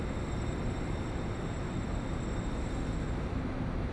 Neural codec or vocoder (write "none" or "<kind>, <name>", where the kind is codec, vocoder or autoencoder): none